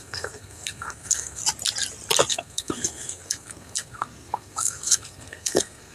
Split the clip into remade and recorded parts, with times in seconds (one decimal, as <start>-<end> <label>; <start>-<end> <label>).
0.0-1.4 remade; 1.4-2.3 recorded; 2.3-5.9 remade